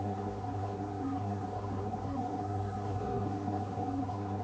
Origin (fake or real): fake